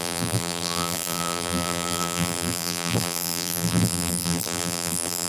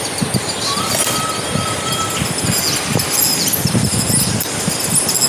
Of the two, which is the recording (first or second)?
second